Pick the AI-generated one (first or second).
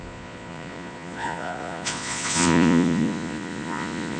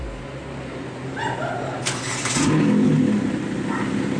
first